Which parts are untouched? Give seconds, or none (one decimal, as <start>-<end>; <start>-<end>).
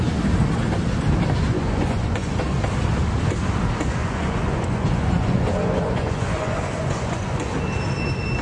0.0-1.5; 2.3-4.0; 7.5-8.4